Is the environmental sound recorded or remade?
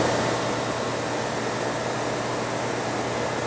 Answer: recorded